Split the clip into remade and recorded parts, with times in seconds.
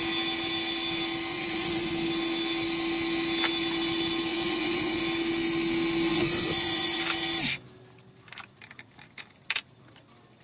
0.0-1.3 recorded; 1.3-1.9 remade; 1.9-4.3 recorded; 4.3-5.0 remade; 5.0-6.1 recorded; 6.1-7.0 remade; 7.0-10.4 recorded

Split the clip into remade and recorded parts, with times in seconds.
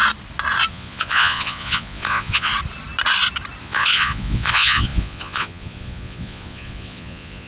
0.0-0.7 recorded; 0.7-2.5 remade; 2.5-3.6 recorded; 3.6-7.5 remade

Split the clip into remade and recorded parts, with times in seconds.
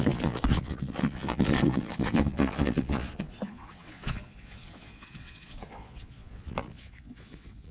0.0-7.7 remade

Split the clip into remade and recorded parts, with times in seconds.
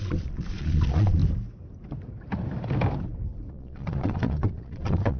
0.0-1.2 remade; 1.2-3.5 recorded; 3.5-5.2 remade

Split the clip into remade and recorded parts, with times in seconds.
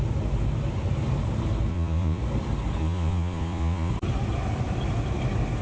0.0-1.7 recorded; 1.7-2.2 remade; 2.2-2.8 recorded; 2.8-3.9 remade; 3.9-5.6 recorded